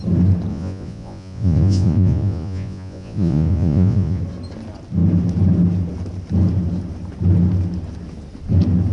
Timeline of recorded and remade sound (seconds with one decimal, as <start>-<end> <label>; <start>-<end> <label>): 0.0-0.5 recorded; 0.5-4.2 remade; 4.2-8.9 recorded